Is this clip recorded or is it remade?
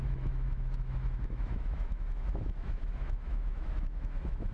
remade